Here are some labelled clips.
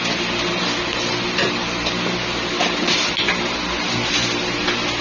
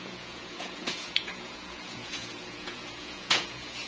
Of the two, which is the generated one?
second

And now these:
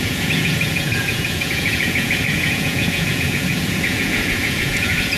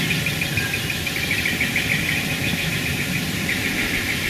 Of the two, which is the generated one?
first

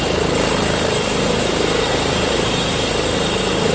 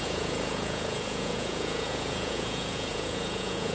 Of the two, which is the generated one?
second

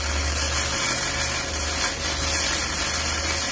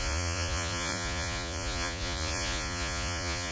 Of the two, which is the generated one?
second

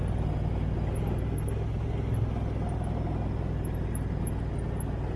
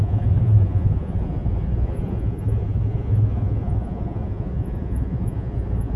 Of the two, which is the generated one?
second